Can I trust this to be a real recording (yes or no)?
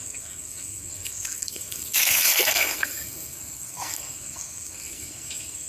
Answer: no